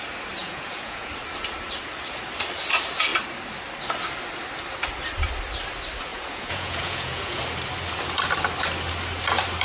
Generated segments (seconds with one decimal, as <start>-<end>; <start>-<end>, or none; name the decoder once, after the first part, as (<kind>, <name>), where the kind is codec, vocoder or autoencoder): 0.4-1.1 (vocoder, Vocos); 6.1-7.4